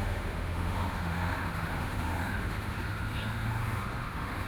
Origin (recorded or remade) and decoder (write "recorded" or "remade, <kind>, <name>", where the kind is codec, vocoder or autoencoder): remade, autoencoder, DAC-VAE